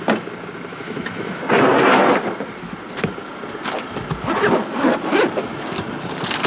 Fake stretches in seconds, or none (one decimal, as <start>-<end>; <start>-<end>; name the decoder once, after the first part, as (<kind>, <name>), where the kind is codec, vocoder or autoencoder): 0.7-1.4 (autoencoder, DAC-VAE)